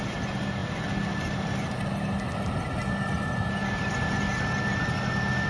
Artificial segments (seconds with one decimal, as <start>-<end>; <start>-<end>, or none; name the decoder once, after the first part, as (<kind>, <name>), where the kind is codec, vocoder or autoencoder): none